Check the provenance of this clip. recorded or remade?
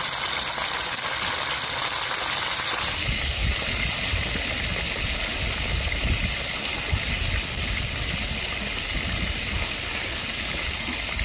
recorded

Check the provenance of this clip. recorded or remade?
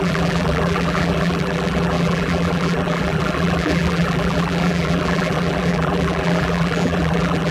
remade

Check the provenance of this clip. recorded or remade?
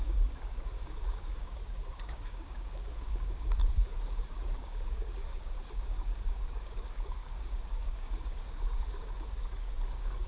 remade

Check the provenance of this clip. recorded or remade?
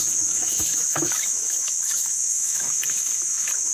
remade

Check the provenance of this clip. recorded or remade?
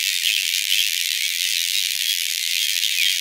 remade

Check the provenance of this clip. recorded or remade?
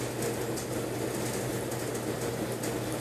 recorded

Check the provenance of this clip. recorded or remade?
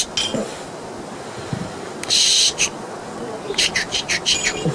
recorded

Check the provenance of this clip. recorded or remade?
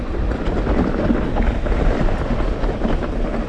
recorded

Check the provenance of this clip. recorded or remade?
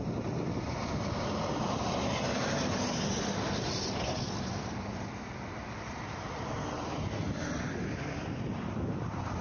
recorded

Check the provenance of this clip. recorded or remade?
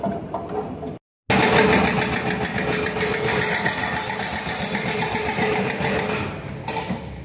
recorded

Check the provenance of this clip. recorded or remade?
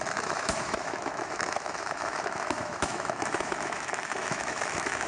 remade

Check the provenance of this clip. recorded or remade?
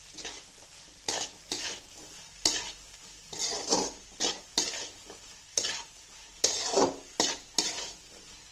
recorded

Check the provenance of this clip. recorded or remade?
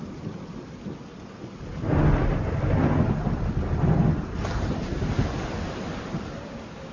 recorded